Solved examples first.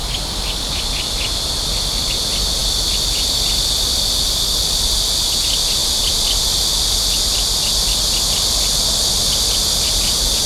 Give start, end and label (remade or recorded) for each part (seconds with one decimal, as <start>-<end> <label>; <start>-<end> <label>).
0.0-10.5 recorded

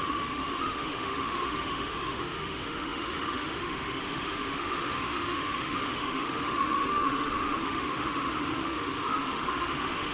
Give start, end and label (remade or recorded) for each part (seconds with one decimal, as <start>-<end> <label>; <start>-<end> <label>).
0.0-10.1 remade

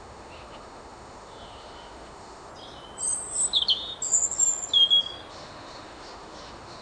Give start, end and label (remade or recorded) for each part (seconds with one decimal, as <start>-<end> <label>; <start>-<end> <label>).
0.0-2.5 remade; 2.5-5.3 recorded; 5.3-6.8 remade